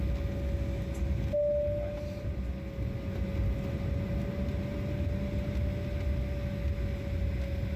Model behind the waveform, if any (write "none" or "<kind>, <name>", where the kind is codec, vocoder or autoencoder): none